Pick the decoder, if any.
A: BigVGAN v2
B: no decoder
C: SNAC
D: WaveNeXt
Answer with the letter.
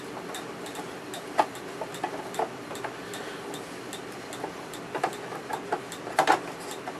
B